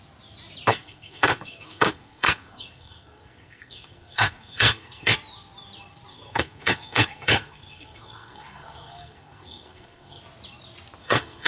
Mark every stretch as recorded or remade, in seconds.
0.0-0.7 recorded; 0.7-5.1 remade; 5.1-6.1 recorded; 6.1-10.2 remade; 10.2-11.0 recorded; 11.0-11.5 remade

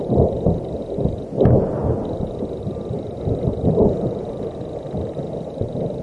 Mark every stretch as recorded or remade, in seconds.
0.0-6.0 recorded

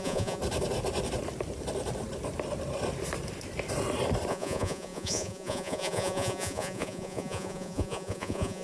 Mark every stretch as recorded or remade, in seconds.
0.0-0.4 remade; 0.4-4.3 recorded; 4.3-8.6 remade

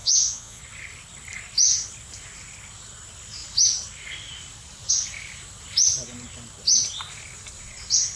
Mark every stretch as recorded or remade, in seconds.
0.0-0.6 remade; 0.6-8.2 recorded

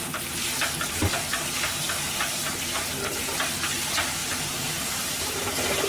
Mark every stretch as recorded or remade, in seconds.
0.0-4.2 recorded; 4.2-5.5 remade; 5.5-5.9 recorded

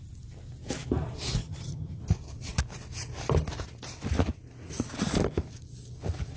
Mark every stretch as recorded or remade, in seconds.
0.0-1.4 recorded; 1.4-2.0 remade; 2.0-6.4 recorded